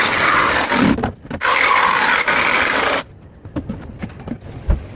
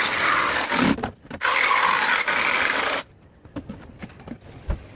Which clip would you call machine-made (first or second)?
second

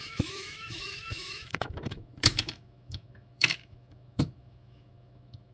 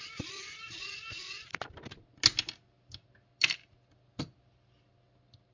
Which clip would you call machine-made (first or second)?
first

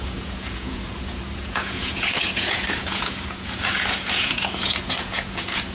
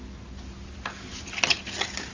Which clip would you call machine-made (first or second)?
first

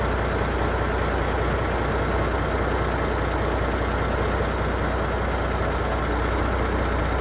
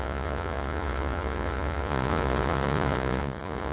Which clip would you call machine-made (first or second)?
second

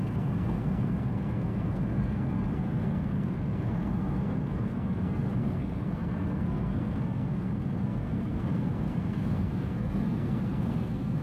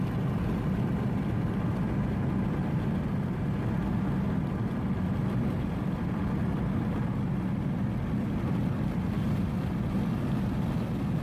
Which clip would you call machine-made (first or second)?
first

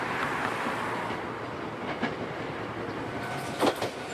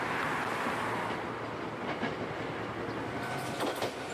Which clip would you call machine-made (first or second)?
first